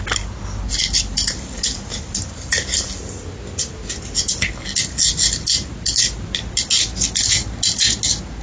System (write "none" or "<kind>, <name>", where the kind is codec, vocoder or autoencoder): none